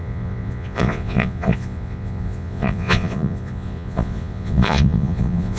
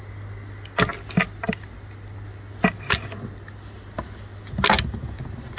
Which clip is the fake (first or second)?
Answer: first